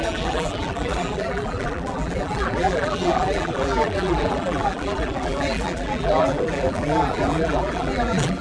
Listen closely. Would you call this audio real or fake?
fake